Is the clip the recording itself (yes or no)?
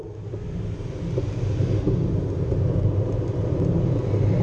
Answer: yes